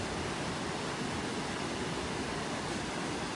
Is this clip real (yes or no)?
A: yes